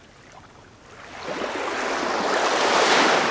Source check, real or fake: real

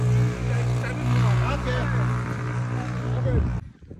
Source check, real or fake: real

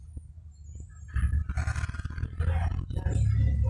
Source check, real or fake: real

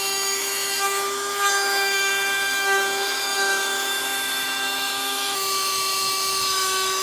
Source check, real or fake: fake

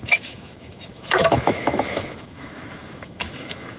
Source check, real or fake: fake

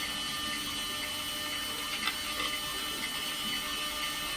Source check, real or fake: real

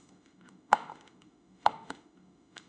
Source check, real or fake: fake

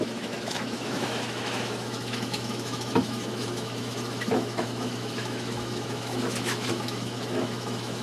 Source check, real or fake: fake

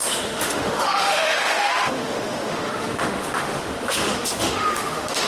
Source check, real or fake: fake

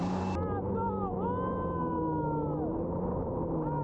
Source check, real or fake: real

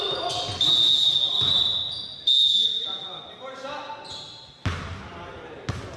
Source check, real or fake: real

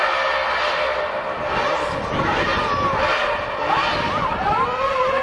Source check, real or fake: real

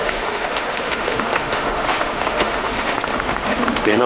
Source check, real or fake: fake